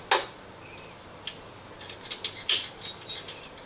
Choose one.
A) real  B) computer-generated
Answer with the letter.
A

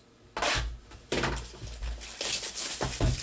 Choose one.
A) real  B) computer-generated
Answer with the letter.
A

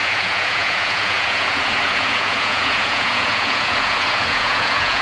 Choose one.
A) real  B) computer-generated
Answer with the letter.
B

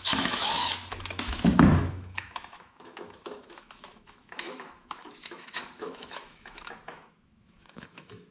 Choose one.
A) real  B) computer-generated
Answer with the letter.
B